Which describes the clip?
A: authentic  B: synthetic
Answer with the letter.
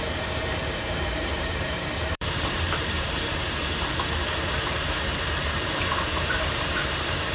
B